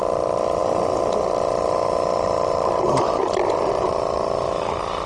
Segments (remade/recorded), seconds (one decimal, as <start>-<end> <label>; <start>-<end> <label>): 0.0-0.6 recorded; 0.6-3.7 remade; 3.7-5.1 recorded

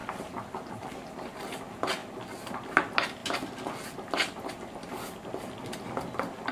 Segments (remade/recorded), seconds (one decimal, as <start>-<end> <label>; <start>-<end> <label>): 0.0-6.5 recorded